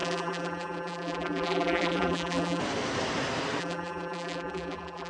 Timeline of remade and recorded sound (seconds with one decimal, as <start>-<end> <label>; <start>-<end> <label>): 0.0-2.6 remade; 2.6-3.6 recorded; 3.6-5.1 remade